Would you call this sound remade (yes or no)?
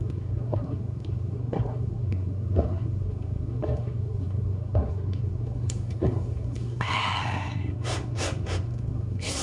yes